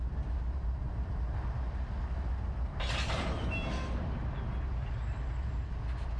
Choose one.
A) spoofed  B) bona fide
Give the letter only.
B